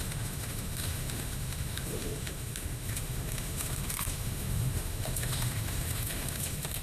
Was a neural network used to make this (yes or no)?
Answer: yes